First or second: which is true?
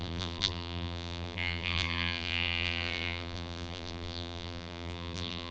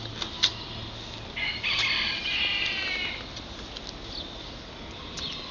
second